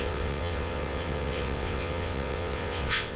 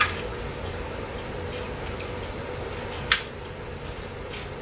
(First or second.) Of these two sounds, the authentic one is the second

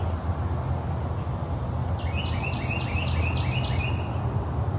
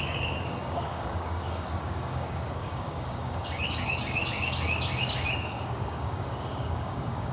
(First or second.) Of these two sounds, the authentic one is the first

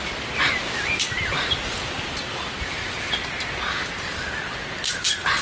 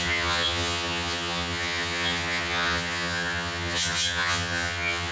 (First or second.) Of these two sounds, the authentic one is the first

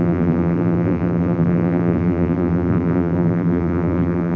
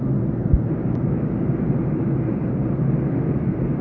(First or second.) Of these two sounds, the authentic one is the second